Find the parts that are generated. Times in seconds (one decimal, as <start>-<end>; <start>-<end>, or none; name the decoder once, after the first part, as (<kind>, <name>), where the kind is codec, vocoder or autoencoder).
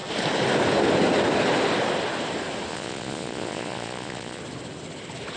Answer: 2.7-4.4 (vocoder, Vocos)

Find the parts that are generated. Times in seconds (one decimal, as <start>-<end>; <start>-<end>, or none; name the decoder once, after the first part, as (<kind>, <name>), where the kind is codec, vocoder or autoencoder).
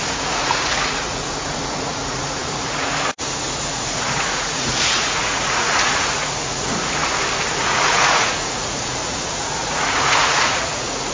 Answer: 0.0-7.0 (vocoder, Vocos); 7.6-11.1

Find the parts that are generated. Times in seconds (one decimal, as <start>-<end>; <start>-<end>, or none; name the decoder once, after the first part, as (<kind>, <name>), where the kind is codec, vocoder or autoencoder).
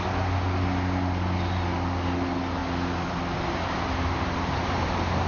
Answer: none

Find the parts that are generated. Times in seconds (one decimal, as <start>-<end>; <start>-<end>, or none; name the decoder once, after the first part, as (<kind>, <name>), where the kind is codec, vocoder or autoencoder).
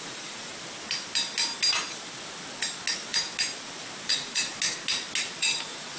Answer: 0.0-0.5 (vocoder, Vocos); 4.1-4.5; 5.4-6.0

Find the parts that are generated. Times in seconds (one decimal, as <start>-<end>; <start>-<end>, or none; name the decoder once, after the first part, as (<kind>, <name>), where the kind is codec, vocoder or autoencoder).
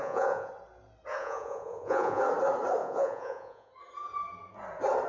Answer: 0.0-0.5 (vocoder, Vocos); 1.2-2.2; 2.8-3.7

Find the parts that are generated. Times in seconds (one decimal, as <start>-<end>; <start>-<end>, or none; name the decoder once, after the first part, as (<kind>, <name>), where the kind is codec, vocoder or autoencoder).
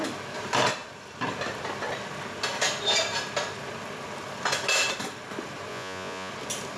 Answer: 5.7-6.3 (vocoder, Vocos)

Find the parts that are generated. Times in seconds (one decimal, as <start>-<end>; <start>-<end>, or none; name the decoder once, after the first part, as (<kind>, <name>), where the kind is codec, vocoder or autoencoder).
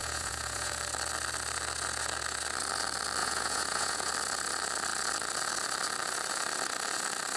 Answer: 0.0-0.7 (vocoder, Vocos); 3.2-4.1